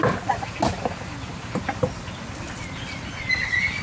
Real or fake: real